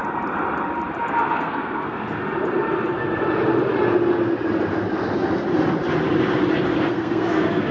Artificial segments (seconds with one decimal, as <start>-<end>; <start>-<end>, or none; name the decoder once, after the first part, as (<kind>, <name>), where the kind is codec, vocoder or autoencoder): 1.1-2.2 (codec, SNAC); 6.8-7.7